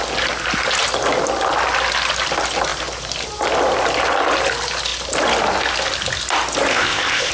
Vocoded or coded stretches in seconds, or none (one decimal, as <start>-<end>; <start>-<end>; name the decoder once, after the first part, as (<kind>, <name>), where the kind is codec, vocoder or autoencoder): 6.7-7.3 (codec, ZipCodec)